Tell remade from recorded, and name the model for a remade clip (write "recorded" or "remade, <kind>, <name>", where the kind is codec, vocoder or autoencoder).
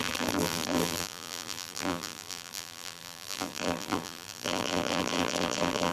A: remade, vocoder, BigVGAN v2